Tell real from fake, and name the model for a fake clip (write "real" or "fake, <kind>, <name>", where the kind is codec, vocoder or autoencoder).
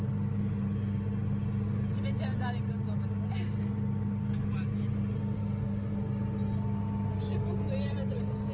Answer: real